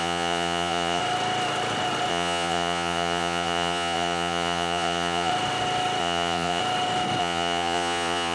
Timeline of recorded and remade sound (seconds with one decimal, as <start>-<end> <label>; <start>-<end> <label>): 0.0-1.0 remade; 1.0-2.1 recorded; 2.1-5.3 remade; 5.3-6.0 recorded; 6.0-6.6 remade; 6.6-7.2 recorded; 7.2-8.3 remade